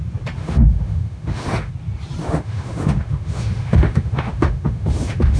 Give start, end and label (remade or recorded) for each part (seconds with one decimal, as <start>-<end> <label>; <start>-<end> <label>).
0.0-0.4 recorded; 0.4-1.7 remade; 1.7-2.2 recorded; 2.2-5.4 remade